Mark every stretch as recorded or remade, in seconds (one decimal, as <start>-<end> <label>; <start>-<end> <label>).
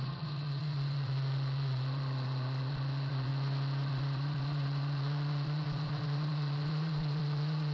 0.0-3.3 remade; 3.3-3.9 recorded; 3.9-7.7 remade